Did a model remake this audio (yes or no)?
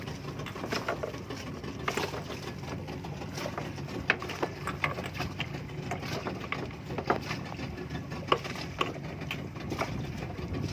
no